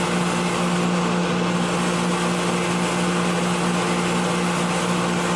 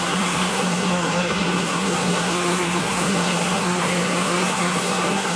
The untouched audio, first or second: first